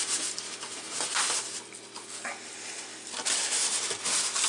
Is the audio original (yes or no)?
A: yes